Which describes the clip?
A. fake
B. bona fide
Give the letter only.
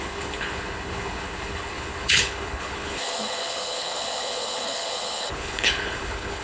A